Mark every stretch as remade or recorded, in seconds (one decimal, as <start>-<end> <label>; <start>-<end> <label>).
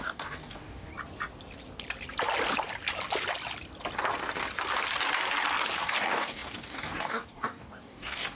0.0-0.9 remade; 0.9-5.8 recorded; 5.8-8.3 remade